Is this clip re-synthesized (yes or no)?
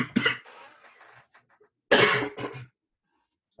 no